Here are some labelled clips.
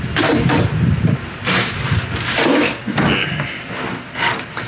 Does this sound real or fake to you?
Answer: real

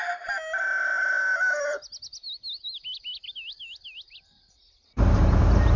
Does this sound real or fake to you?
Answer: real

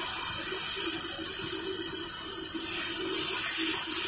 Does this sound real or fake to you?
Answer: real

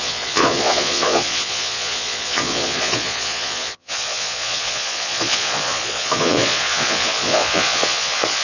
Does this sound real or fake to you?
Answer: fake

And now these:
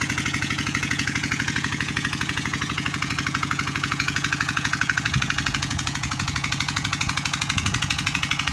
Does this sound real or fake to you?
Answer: fake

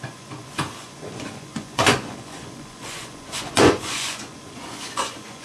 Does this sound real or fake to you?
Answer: fake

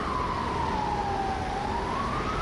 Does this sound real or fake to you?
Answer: real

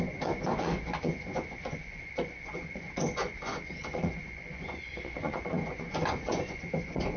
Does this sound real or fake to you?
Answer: fake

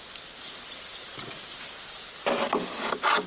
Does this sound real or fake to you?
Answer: real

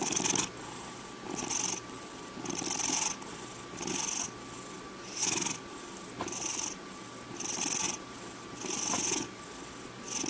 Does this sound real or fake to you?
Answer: real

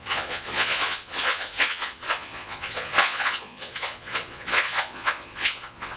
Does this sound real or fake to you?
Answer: fake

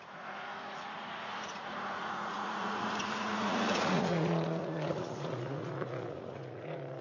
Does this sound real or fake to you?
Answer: fake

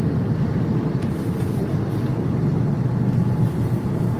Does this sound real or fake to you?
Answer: real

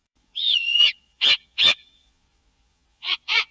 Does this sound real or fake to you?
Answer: fake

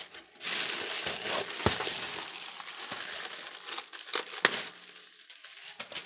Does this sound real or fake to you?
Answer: real